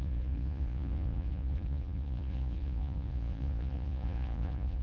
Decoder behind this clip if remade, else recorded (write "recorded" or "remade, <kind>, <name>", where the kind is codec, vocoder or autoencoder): remade, vocoder, Vocos